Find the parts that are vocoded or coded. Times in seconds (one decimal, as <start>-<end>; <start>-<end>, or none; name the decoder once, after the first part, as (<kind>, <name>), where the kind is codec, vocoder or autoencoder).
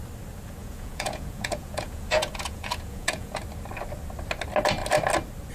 0.6-3.4 (vocoder, Vocos)